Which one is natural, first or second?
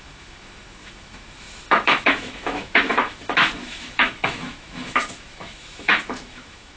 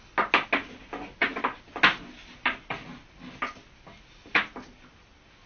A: second